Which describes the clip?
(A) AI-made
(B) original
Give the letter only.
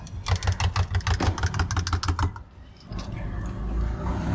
B